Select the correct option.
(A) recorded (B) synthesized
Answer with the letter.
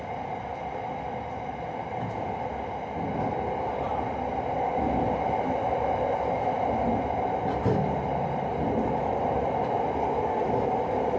A